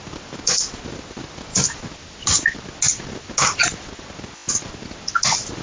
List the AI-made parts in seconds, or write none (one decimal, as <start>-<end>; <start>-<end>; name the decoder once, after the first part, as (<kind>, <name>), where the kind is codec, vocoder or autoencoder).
none